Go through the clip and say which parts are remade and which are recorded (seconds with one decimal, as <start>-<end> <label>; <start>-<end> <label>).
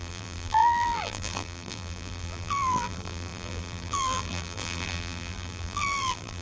0.0-6.4 remade